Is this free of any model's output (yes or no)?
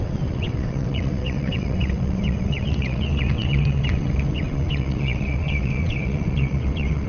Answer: no